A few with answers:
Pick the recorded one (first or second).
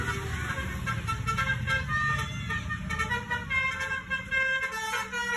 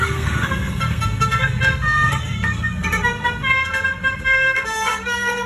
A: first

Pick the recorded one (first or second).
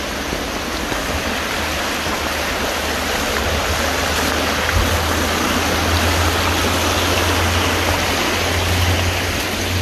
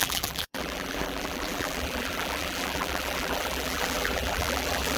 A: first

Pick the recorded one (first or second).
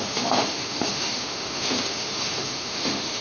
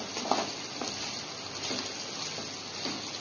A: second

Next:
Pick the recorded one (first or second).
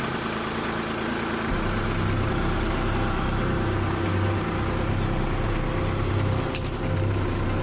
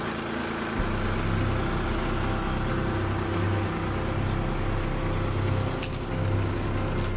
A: second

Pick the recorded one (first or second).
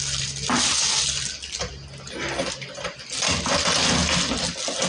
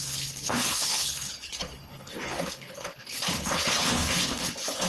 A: first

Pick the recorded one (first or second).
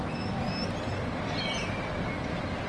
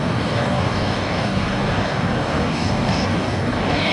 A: first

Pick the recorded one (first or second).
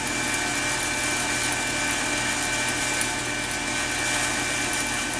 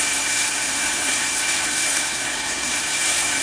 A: first